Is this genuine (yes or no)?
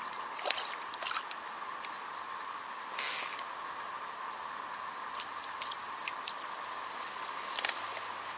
yes